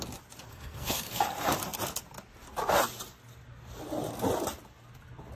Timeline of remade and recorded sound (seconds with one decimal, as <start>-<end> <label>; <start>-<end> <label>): 0.0-0.5 recorded; 0.5-1.2 remade; 1.2-5.3 recorded